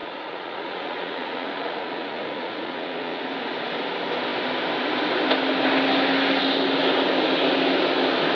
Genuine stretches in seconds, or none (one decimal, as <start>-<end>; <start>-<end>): 3.2-8.4

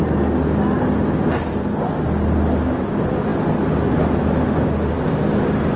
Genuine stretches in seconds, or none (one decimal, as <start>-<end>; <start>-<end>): 0.0-5.8

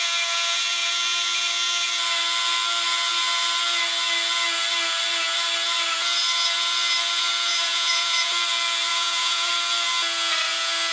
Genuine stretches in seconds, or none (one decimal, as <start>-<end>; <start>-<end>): 0.0-7.5; 8.3-8.9; 9.5-10.9

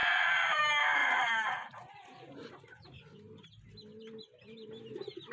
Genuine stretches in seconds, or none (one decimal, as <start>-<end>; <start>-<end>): 0.6-1.0; 3.1-5.3

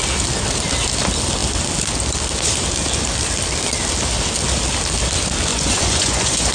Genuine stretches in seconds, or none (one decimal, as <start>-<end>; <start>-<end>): 0.0-5.5

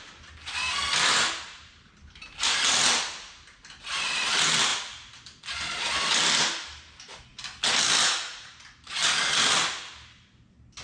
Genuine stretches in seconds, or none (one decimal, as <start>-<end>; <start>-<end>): 0.0-10.8

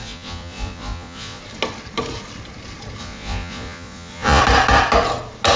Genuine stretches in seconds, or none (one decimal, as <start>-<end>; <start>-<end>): 1.4-3.0; 4.4-5.6